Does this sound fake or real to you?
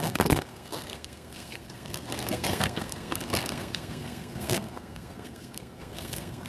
fake